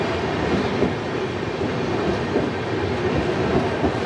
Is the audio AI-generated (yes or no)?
no